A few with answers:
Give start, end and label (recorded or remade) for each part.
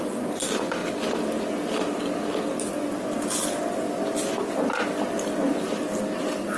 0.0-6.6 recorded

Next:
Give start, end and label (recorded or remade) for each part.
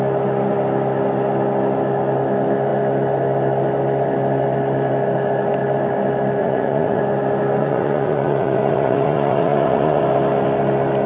0.0-6.4 recorded; 6.4-7.0 remade; 7.0-7.6 recorded; 7.6-10.0 remade; 10.0-11.1 recorded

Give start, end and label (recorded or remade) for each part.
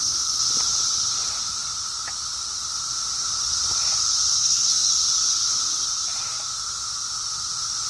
0.0-4.4 recorded; 4.4-4.9 remade; 4.9-7.9 recorded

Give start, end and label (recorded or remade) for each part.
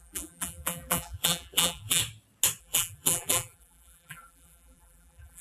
0.0-2.0 remade; 2.0-2.6 recorded; 2.6-5.4 remade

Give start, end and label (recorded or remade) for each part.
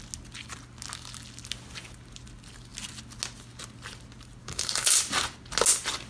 0.0-4.4 recorded; 4.4-5.0 remade; 5.0-6.1 recorded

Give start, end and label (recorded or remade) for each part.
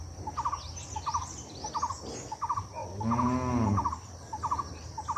0.0-5.2 recorded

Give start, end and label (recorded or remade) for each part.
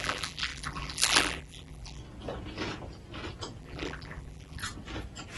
0.0-2.0 remade; 2.0-3.6 recorded; 3.6-4.6 remade; 4.6-5.4 recorded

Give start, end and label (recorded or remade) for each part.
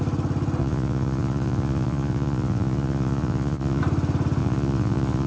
0.0-0.6 recorded; 0.6-3.8 remade; 3.8-4.4 recorded; 4.4-5.3 remade